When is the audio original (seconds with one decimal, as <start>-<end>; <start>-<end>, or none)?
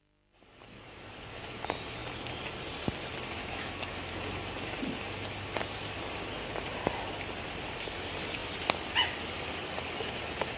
0.0-3.4; 4.1-10.6